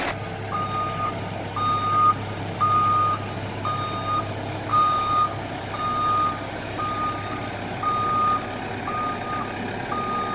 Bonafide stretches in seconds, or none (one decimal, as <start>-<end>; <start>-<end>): 0.0-4.7; 5.5-10.3

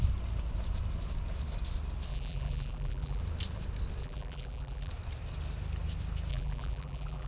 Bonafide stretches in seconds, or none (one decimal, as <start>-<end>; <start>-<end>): 0.0-2.1; 3.2-4.0; 4.9-6.3

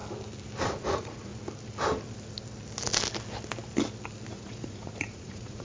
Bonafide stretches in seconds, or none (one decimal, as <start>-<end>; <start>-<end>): 0.0-0.8; 1.3-4.3

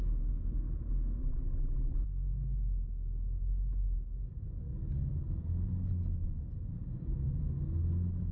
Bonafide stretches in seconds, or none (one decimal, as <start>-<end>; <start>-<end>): 0.0-1.2; 2.0-8.3

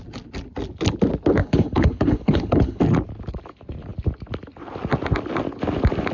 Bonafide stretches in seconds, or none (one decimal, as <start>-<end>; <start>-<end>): 0.0-1.4; 2.8-6.1

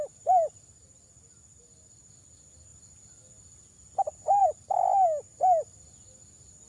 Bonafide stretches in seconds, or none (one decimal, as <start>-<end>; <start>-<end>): 0.0-6.7